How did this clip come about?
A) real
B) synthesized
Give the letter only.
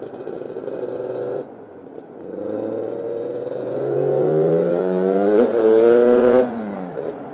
B